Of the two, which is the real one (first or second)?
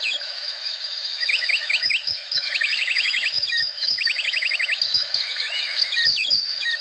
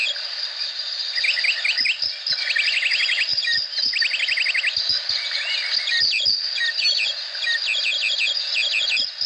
second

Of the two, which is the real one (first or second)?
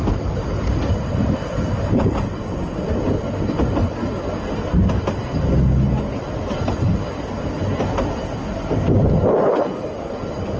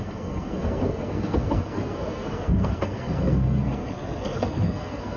first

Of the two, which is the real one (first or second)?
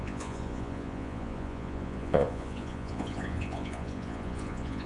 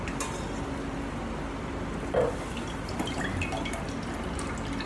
second